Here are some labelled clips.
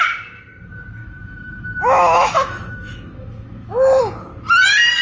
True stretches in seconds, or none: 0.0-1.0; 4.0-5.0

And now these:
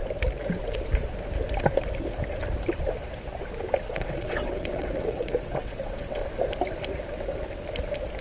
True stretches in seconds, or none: 0.0-3.8; 6.2-8.2

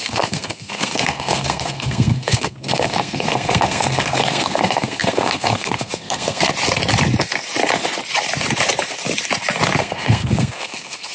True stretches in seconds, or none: 6.5-9.8

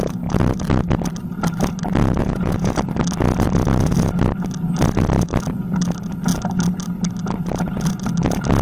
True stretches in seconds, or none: 0.0-2.2; 2.7-8.6

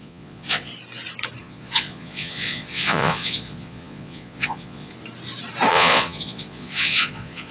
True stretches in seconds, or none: 0.7-1.4; 4.9-5.7

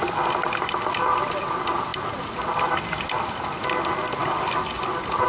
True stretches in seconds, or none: 0.0-5.3

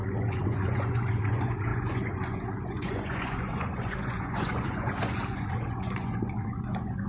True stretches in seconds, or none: none

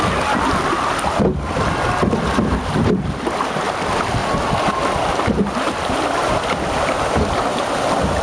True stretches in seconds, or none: 0.0-8.2